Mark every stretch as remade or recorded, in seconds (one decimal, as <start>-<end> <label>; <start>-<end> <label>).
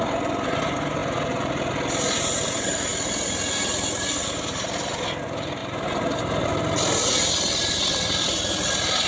0.0-9.1 recorded